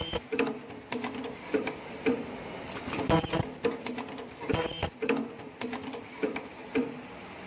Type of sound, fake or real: real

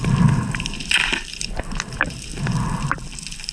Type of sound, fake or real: real